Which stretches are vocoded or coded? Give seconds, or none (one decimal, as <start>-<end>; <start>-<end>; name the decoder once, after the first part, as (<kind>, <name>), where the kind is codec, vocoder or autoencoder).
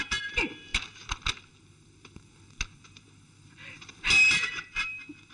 0.0-0.7 (vocoder, BigVGAN v2); 3.9-5.3